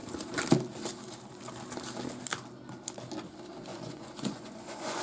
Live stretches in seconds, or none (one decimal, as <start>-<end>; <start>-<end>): 0.0-3.7